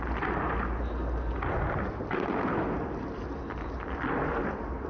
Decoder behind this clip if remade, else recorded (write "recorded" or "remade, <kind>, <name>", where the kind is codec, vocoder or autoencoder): recorded